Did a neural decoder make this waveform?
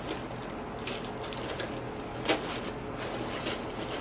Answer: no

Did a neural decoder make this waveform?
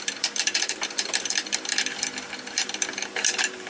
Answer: yes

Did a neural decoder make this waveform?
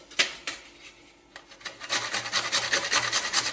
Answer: no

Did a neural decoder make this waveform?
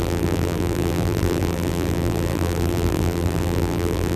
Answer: yes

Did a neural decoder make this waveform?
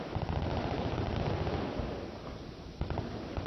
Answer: no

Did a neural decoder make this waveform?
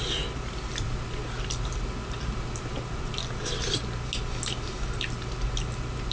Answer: no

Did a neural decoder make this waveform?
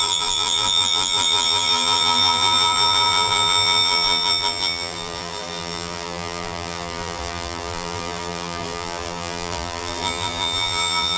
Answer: yes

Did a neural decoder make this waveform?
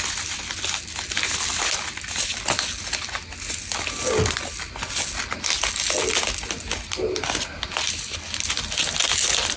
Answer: no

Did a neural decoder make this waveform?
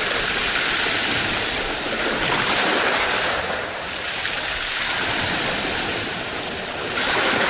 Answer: yes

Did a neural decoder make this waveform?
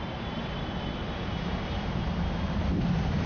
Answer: yes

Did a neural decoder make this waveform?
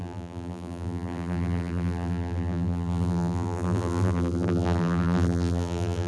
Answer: yes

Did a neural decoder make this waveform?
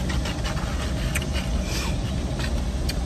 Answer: no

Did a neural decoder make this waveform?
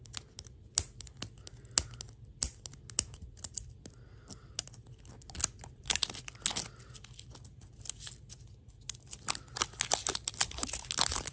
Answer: no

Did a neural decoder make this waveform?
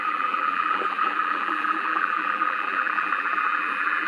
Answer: yes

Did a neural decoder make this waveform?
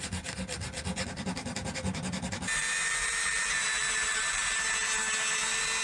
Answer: no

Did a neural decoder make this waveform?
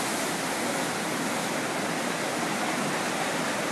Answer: no